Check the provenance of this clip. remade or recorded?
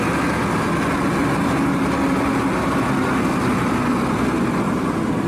recorded